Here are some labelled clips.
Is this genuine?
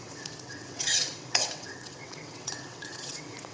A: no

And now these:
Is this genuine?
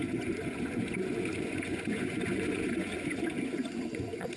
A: no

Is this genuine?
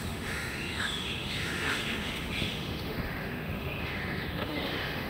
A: no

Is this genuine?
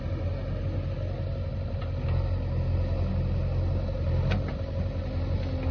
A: yes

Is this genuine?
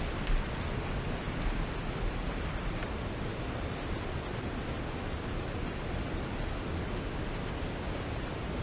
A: yes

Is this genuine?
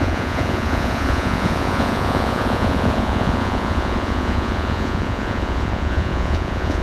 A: no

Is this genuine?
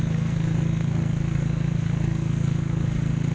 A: no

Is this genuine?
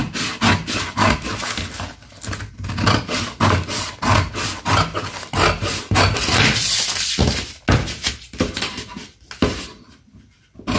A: yes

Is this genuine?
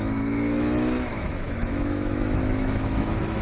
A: no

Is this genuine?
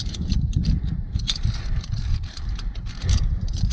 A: no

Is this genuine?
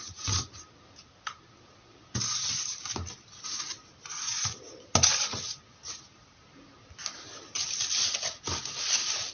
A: yes